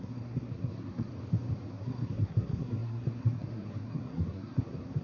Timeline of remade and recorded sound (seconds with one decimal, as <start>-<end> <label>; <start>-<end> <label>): 0.0-1.1 remade; 1.1-1.7 recorded; 1.7-5.0 remade